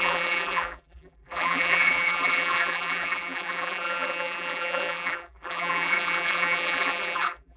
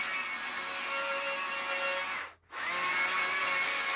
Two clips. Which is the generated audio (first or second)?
first